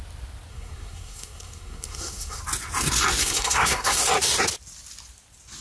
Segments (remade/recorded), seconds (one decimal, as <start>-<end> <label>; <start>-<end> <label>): 0.0-0.5 recorded; 0.5-2.4 remade; 2.4-3.2 recorded; 3.2-4.0 remade; 4.0-5.6 recorded